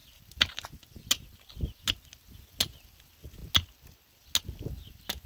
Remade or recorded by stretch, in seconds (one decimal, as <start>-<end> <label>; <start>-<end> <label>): 0.0-5.3 recorded